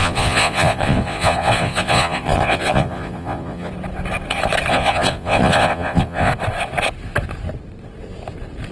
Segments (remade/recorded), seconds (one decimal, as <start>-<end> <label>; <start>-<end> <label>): 0.0-3.7 remade; 3.7-4.7 recorded; 4.7-6.3 remade; 6.3-8.7 recorded